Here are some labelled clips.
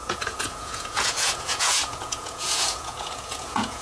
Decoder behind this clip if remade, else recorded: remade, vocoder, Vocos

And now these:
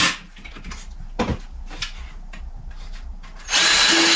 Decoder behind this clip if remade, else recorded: recorded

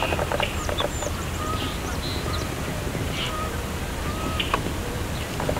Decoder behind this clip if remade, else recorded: remade, vocoder, BigVGAN v2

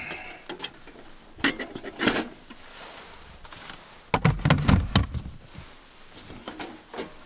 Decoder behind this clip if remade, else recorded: recorded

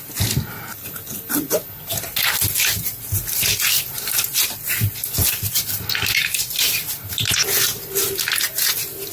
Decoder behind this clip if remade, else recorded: recorded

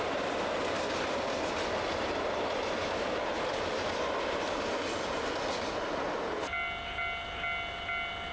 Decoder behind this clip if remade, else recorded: recorded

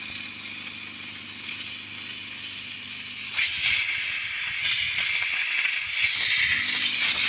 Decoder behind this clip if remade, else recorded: recorded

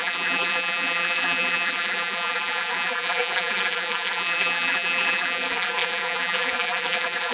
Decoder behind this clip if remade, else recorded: remade, vocoder, BigVGAN v2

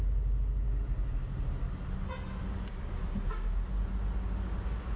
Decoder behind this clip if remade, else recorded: recorded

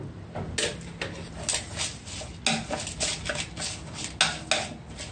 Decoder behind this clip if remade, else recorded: recorded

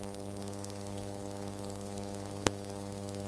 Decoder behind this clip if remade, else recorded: remade, codec, SNAC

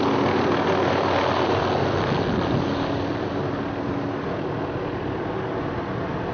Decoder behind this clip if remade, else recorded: recorded